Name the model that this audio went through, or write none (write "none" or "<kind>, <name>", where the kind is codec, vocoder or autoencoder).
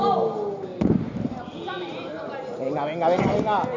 none